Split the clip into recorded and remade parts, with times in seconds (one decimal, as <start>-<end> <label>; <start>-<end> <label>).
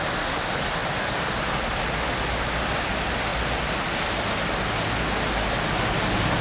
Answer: 0.0-6.4 recorded